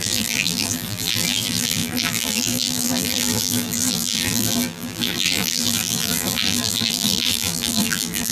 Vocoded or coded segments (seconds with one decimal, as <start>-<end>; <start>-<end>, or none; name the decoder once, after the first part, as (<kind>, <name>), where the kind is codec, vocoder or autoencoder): 0.0-8.3 (vocoder, BigVGAN v2)